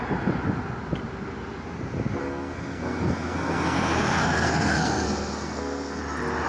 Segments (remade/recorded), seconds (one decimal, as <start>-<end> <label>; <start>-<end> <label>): 0.0-2.2 recorded; 2.2-6.0 remade; 6.0-6.5 recorded